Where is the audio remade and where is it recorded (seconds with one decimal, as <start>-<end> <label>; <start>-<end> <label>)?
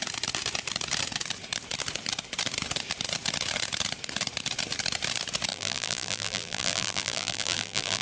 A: 0.0-5.5 recorded; 5.5-8.0 remade